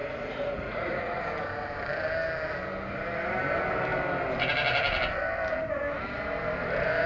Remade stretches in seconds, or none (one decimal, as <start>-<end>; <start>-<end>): 0.0-1.2